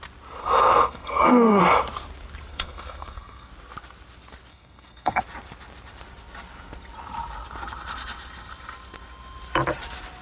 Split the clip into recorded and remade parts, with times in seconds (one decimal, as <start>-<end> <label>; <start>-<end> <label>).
0.0-0.4 recorded; 0.4-1.6 remade; 1.6-2.5 recorded; 2.5-3.5 remade; 3.5-4.5 recorded; 4.5-5.2 remade; 5.2-10.2 recorded